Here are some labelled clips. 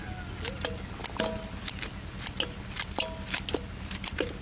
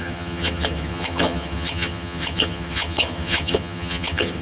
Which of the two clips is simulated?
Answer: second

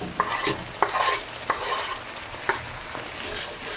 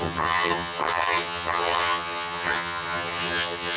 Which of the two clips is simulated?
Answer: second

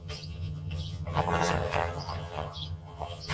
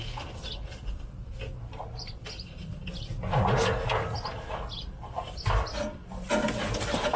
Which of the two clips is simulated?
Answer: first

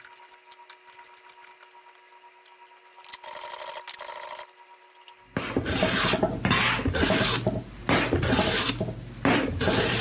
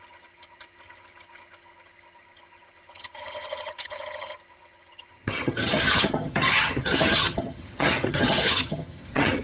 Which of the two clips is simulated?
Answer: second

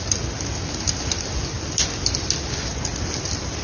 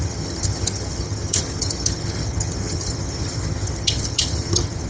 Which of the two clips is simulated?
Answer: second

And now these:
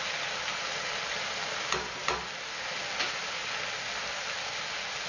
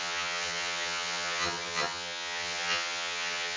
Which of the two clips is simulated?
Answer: second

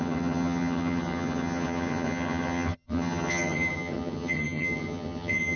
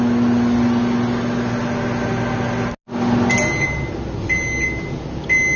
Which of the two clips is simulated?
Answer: first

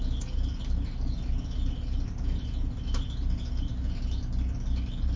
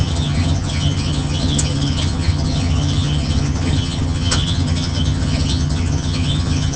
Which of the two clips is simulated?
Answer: second